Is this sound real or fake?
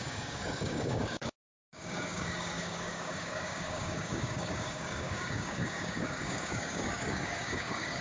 fake